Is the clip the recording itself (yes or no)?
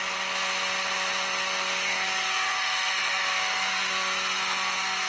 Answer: yes